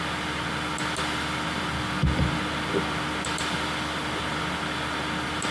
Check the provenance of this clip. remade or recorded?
recorded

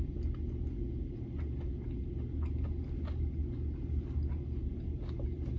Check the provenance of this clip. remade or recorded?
recorded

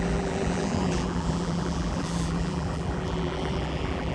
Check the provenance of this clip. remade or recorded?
remade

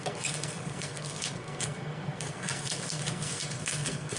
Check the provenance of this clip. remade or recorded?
remade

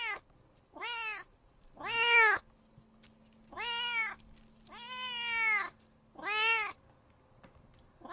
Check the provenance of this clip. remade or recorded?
recorded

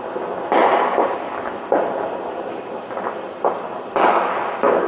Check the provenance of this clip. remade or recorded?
recorded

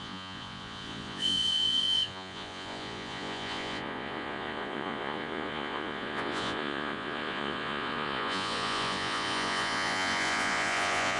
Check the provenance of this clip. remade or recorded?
remade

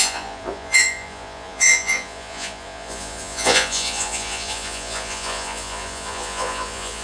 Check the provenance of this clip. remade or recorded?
remade